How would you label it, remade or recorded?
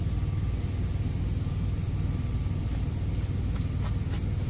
recorded